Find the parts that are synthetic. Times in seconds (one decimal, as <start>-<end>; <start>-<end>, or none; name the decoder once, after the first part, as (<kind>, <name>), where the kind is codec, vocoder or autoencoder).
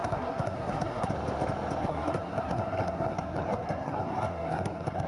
0.0-1.1 (codec, SNAC); 1.8-5.1